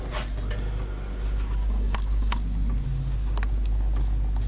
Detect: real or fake real